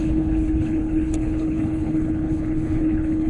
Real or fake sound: fake